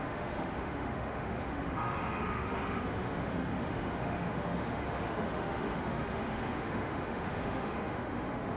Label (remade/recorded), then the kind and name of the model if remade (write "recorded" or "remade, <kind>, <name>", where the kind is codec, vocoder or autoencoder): remade, autoencoder, DAC-VAE